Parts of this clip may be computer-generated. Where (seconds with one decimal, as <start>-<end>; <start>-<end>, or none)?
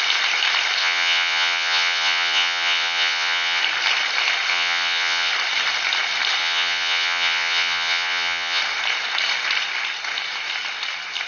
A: 0.8-3.6; 4.5-5.3; 6.4-8.6